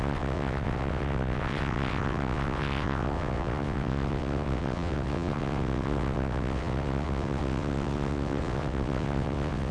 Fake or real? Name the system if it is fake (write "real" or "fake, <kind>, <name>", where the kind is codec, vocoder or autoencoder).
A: fake, vocoder, WaveNeXt